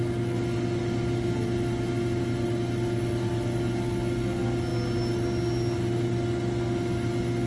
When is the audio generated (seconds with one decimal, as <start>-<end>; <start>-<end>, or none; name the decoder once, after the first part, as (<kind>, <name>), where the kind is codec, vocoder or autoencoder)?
none